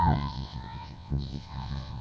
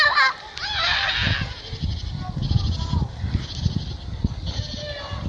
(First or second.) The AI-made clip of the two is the first